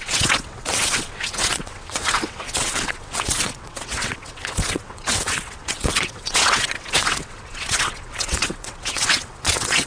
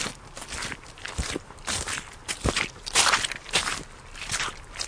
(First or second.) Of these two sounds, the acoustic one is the second